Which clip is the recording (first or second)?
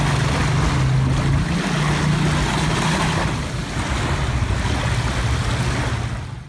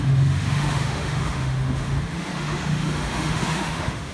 first